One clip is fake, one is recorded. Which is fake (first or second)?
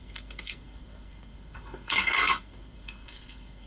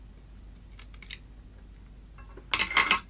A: first